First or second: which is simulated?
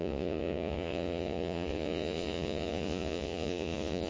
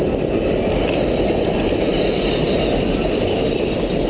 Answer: first